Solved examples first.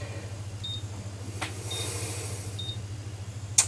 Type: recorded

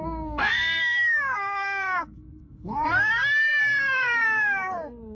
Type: remade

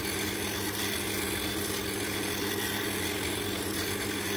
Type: recorded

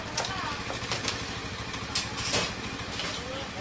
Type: recorded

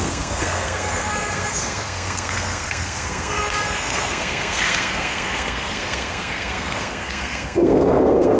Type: remade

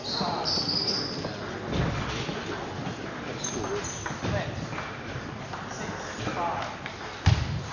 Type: recorded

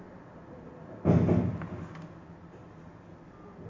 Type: recorded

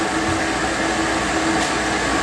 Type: recorded